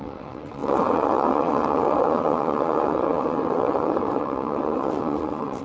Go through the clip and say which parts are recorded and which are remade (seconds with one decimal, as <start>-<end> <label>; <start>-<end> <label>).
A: 0.0-5.6 remade